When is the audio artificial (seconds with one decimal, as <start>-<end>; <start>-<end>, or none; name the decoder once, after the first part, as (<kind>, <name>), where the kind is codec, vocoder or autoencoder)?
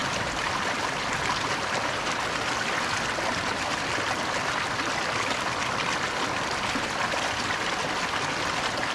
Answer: none